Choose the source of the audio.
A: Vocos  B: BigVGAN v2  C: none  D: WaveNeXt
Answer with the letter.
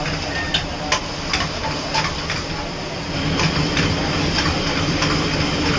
C